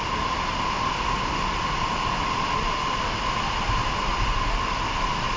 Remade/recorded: recorded